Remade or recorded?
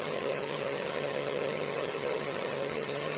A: remade